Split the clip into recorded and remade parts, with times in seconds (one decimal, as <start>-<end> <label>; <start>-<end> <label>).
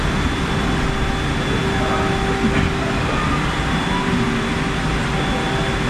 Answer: 0.0-5.9 recorded